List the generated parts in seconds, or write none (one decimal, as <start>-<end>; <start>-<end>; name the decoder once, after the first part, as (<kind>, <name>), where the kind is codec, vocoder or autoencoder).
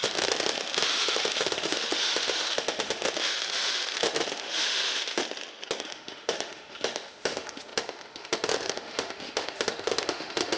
0.0-5.2 (autoencoder, DAC-VAE); 5.8-10.6